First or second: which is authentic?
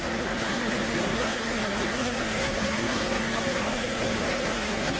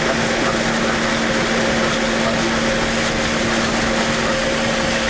second